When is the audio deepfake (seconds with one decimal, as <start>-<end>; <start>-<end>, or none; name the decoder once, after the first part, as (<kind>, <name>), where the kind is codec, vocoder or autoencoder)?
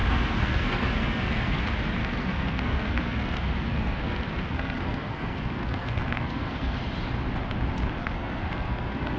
0.0-1.6 (codec, SNAC); 2.0-6.8; 8.0-9.2